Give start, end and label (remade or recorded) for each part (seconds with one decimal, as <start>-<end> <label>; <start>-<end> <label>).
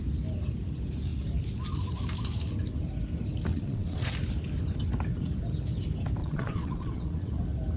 0.0-3.5 recorded; 3.5-4.1 remade; 4.1-6.2 recorded; 6.2-7.3 remade; 7.3-7.8 recorded